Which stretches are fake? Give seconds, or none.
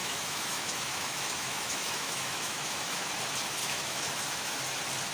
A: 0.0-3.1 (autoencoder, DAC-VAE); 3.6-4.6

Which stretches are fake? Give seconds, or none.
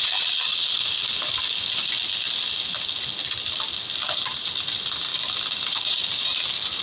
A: none